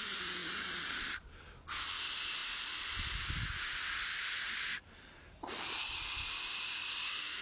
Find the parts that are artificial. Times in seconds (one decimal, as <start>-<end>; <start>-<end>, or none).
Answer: none